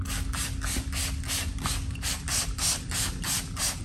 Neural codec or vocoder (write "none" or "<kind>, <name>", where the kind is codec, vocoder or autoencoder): none